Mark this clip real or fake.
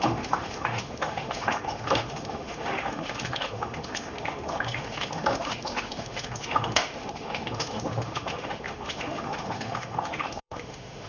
fake